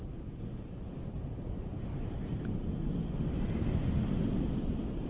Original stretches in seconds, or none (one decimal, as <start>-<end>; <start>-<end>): 0.0-1.9; 2.5-5.1